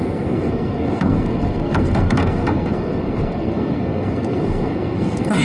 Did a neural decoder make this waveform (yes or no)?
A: yes